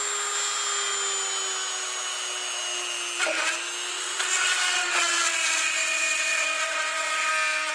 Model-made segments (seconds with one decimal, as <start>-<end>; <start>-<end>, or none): 3.9-7.3